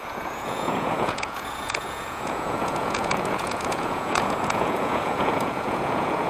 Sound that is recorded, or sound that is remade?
remade